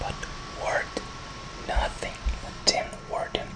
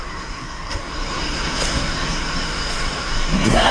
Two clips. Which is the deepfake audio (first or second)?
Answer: second